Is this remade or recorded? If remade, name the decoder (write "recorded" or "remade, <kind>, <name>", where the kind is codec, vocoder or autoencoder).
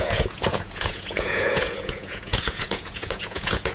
remade, vocoder, Vocos